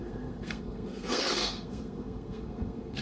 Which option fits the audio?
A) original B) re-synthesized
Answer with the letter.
B